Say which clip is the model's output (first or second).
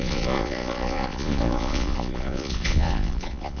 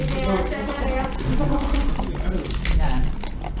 first